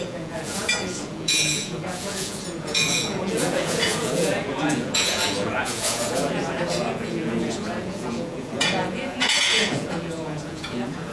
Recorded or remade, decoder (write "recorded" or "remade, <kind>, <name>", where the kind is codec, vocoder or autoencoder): remade, vocoder, Vocos